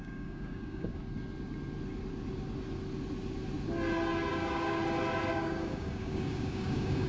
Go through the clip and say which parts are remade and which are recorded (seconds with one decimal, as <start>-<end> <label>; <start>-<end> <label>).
0.0-1.0 remade; 1.0-4.3 recorded; 4.3-4.8 remade; 4.8-5.3 recorded; 5.3-7.1 remade